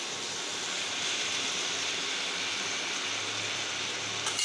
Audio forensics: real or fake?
real